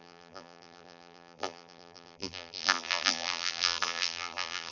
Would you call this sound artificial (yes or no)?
yes